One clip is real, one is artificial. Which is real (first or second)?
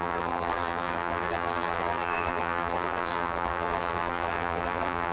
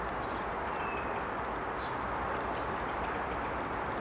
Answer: second